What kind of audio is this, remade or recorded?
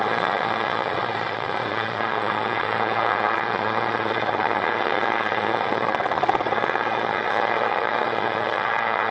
remade